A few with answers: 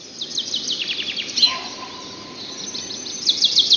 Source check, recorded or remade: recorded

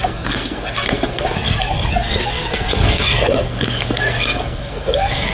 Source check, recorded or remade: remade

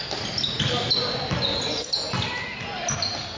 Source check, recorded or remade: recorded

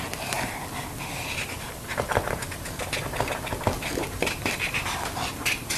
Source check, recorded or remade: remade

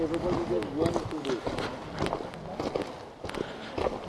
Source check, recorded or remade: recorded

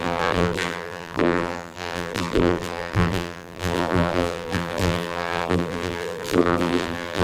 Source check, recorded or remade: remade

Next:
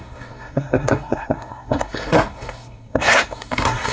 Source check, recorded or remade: remade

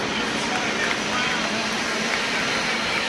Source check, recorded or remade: recorded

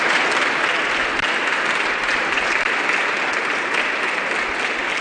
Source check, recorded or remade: remade